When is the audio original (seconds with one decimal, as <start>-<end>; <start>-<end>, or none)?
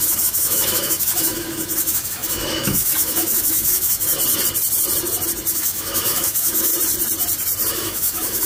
4.1-5.5; 6.7-7.7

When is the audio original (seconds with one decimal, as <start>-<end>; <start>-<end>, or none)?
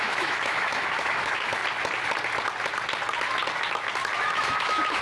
1.6-4.2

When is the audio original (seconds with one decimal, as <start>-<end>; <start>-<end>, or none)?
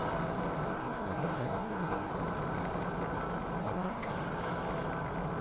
0.0-0.7; 2.1-3.6; 4.1-5.4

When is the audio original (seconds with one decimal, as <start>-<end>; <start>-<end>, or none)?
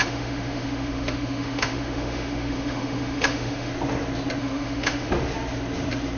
3.7-4.4; 5.1-6.2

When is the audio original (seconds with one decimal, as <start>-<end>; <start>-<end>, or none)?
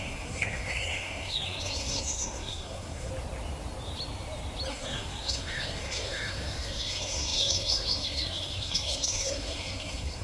3.1-4.7